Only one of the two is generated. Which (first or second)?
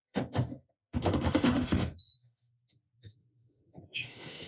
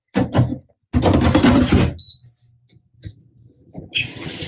first